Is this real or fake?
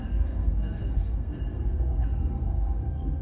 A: fake